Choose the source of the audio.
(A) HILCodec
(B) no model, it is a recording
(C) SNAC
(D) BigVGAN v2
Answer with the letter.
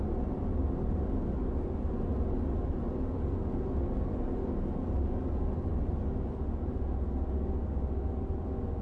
B